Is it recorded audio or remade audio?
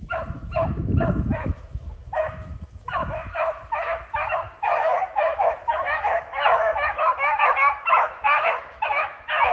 remade